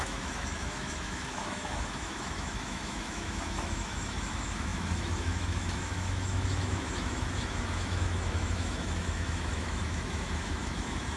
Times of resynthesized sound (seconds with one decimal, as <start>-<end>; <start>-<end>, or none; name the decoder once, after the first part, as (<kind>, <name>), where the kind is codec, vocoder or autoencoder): 0.0-11.2 (autoencoder, DAC-VAE)